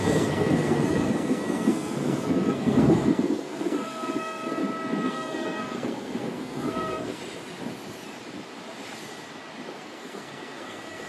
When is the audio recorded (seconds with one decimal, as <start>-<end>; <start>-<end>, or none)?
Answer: 4.6-5.1; 7.2-9.7